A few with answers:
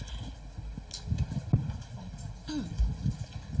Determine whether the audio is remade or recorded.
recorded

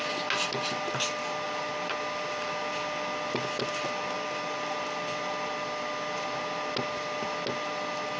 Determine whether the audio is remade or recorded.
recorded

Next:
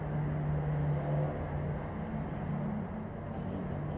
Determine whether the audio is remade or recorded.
recorded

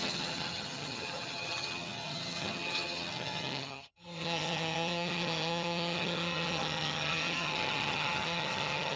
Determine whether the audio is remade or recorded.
remade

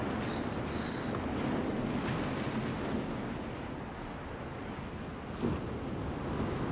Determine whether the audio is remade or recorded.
recorded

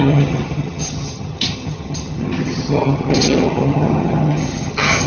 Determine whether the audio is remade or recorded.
remade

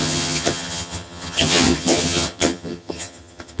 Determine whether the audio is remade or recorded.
remade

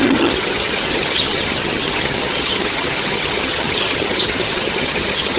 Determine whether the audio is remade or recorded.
remade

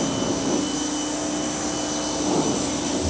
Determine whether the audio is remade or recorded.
recorded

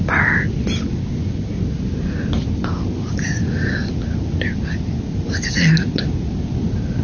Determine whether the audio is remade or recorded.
recorded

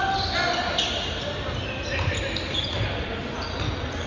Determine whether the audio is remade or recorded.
recorded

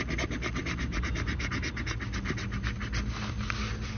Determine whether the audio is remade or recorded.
recorded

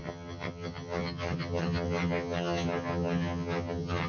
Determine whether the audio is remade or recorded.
remade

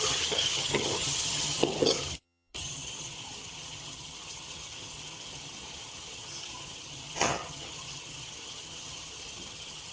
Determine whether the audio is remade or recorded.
remade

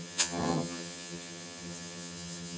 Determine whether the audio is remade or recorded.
remade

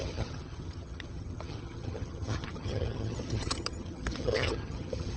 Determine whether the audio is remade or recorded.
remade